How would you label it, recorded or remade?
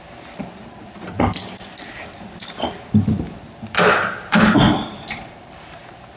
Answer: remade